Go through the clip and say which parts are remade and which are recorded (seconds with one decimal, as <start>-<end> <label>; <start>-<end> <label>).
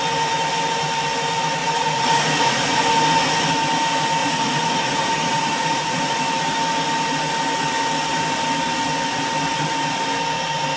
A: 0.0-1.6 recorded; 1.6-2.8 remade; 2.8-4.2 recorded; 4.2-6.2 remade; 6.2-10.8 recorded